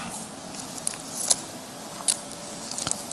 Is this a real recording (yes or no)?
yes